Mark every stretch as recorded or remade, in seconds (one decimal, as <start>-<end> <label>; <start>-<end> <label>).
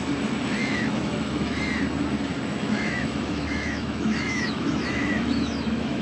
0.0-0.6 recorded; 0.6-1.6 remade; 1.6-2.3 recorded; 2.3-6.0 remade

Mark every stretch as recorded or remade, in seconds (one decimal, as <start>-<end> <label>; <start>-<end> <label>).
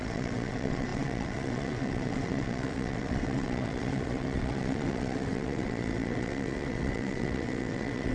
0.0-8.1 remade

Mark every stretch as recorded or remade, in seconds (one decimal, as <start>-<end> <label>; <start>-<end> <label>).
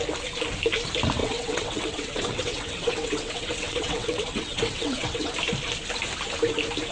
0.0-1.2 recorded; 1.2-5.3 remade; 5.3-6.9 recorded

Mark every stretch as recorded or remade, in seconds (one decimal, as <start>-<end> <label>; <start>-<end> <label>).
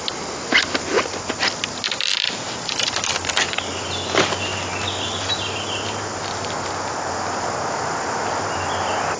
0.0-9.2 recorded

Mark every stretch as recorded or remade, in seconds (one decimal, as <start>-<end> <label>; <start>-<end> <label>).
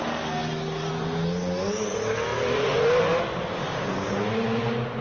0.0-3.6 recorded; 3.6-4.1 remade; 4.1-5.0 recorded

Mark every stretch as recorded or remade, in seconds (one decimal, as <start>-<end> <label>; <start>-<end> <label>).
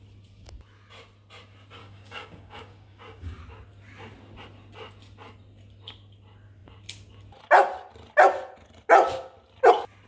0.0-1.8 recorded; 1.8-3.4 remade; 3.4-10.1 recorded